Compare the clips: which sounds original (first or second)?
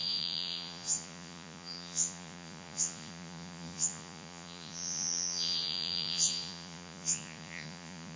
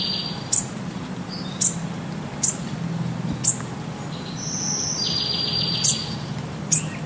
second